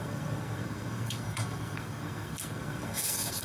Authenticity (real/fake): fake